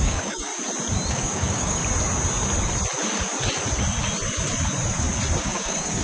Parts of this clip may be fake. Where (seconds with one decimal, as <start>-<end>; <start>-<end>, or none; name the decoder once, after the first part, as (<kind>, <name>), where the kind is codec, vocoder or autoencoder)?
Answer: 0.0-0.5 (codec, DAC); 1.1-1.8; 5.4-6.0